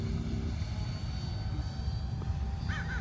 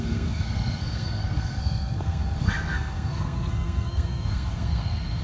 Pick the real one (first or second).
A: first